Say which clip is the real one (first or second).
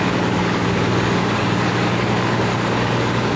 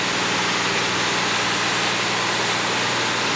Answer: second